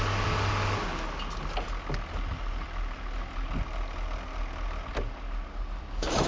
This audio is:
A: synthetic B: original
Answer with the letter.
B